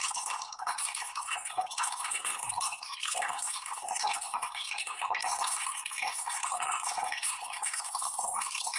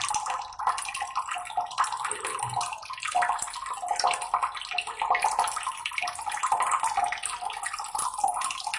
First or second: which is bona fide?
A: second